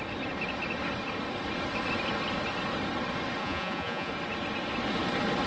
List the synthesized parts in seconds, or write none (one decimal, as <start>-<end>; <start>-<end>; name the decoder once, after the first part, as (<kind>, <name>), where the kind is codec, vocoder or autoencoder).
3.4-4.1 (vocoder, Vocos)